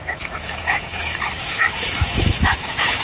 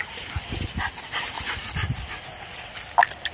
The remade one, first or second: first